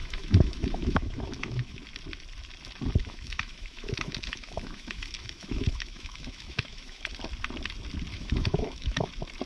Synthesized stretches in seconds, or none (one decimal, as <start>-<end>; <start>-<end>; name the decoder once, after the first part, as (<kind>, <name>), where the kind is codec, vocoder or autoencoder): 0.0-1.8 (autoencoder, DAC-VAE); 3.0-7.1; 8.1-9.1